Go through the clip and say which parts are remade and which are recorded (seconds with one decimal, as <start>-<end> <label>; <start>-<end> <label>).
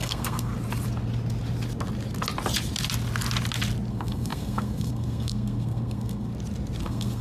0.0-0.5 remade; 0.5-3.9 recorded; 3.9-6.3 remade; 6.3-6.8 recorded; 6.8-7.2 remade